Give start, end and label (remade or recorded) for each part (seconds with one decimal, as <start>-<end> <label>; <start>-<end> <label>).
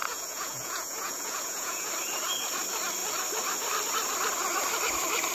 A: 0.0-1.9 remade; 1.9-5.3 recorded